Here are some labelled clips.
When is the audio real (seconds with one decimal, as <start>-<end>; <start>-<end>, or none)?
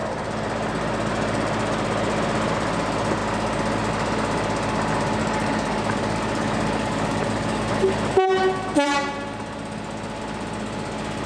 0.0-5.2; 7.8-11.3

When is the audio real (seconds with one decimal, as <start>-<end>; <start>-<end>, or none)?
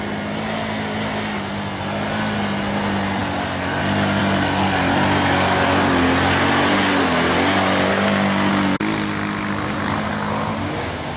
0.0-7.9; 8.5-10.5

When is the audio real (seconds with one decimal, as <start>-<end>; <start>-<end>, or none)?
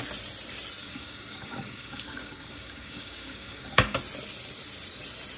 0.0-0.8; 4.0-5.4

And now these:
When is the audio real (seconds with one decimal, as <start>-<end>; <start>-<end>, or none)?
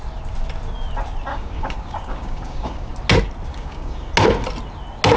0.0-1.3; 2.9-3.5; 4.1-5.2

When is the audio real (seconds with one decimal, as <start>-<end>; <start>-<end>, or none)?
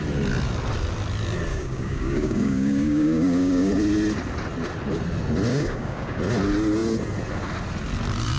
0.0-1.5; 3.7-5.5; 6.2-8.4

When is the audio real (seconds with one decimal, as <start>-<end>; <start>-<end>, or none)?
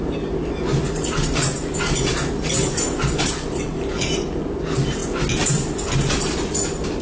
0.0-7.0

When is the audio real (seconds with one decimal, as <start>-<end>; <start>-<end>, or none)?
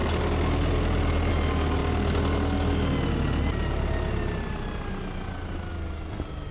0.0-6.5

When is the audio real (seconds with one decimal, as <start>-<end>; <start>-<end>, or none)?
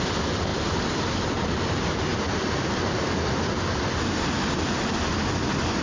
0.0-5.8